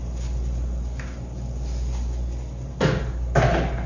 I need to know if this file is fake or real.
real